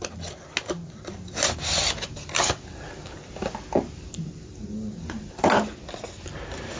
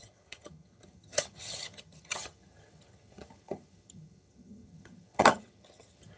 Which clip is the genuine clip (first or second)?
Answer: first